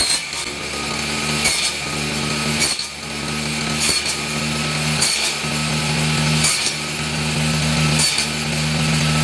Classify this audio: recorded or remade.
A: recorded